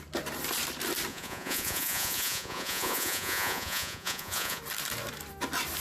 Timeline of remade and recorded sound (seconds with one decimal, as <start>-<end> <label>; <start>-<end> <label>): 0.0-1.1 recorded; 1.1-4.6 remade; 4.6-5.8 recorded